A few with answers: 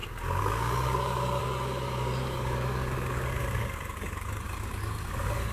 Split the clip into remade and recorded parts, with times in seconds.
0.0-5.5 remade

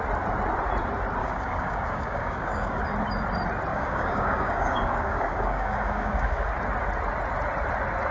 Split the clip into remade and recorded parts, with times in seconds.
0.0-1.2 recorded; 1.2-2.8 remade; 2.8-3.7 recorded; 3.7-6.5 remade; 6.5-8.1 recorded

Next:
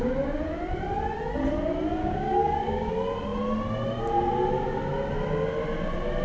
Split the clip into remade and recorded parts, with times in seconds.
0.0-2.0 recorded; 2.0-2.9 remade; 2.9-6.2 recorded

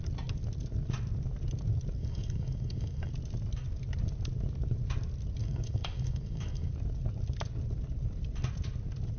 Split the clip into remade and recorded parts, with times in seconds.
0.0-2.0 recorded; 2.0-3.1 remade; 3.1-5.4 recorded; 5.4-6.7 remade; 6.7-9.2 recorded

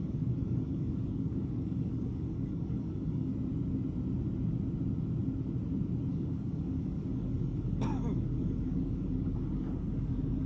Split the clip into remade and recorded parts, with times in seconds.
0.0-3.3 remade; 3.3-6.1 recorded; 6.1-10.5 remade

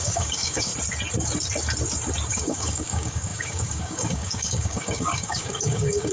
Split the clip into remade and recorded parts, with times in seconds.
0.0-0.7 remade; 0.7-2.3 recorded; 2.3-6.1 remade

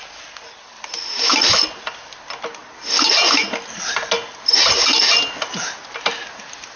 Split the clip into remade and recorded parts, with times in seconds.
0.0-6.8 recorded